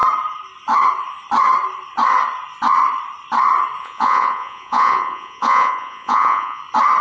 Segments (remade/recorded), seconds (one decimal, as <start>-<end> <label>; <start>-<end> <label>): 0.0-3.8 recorded; 3.8-6.6 remade; 6.6-7.0 recorded